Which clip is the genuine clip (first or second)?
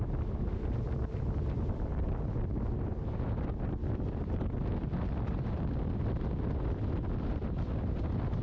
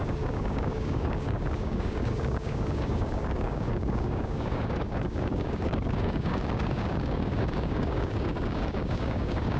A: first